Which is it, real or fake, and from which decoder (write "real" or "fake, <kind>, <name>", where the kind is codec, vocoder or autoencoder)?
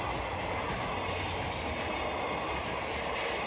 real